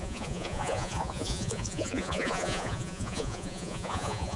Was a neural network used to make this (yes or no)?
yes